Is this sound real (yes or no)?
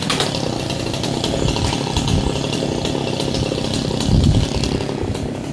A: yes